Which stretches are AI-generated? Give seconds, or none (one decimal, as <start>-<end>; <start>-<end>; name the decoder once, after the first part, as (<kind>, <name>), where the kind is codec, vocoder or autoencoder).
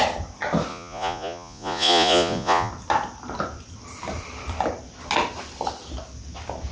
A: 0.7-2.7 (vocoder, Vocos)